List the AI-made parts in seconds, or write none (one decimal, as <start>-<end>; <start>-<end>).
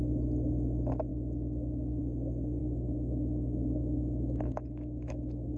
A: 1.1-2.0; 2.6-5.6